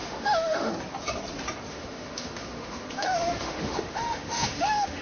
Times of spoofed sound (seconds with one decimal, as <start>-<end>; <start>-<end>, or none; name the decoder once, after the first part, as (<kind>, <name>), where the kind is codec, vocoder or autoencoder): 0.0-0.7 (autoencoder, DAC-VAE); 1.7-5.0